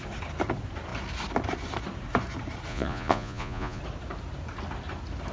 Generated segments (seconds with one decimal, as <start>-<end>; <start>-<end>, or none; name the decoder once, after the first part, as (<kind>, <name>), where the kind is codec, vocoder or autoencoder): 2.7-3.8 (vocoder, Vocos)